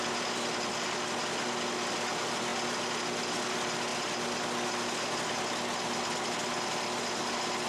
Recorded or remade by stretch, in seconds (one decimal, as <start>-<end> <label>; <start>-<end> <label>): 0.0-7.7 recorded